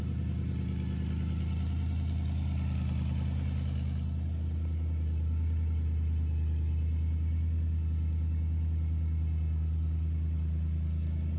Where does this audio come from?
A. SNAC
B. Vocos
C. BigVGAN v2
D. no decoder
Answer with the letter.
D